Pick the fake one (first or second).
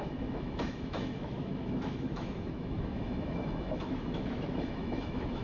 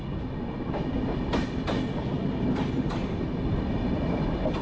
first